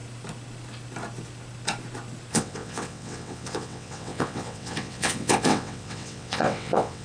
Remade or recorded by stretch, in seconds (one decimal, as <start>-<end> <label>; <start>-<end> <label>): 0.0-2.3 recorded; 2.3-7.0 remade